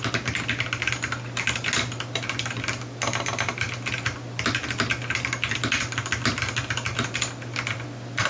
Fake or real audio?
real